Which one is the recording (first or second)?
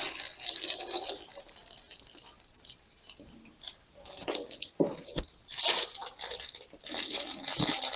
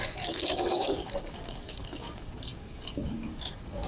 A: first